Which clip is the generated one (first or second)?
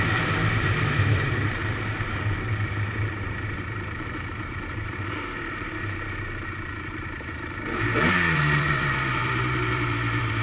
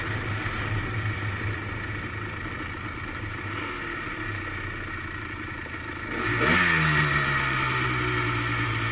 first